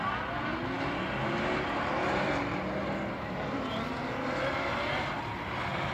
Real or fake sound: real